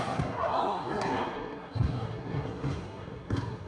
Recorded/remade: remade